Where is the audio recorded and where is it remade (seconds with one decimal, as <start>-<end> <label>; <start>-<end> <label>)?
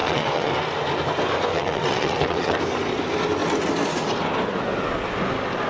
0.0-0.5 remade; 0.5-1.5 recorded; 1.5-2.6 remade; 2.6-5.7 recorded